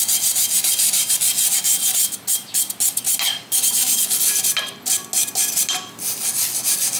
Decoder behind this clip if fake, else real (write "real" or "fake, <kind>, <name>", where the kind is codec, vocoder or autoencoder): real